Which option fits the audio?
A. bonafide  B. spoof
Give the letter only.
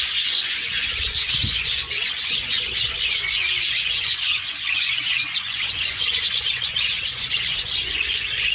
B